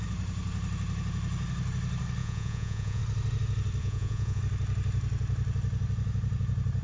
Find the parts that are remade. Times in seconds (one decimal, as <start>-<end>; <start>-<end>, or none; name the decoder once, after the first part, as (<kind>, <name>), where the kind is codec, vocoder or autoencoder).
2.2-3.0 (vocoder, Vocos); 3.8-4.4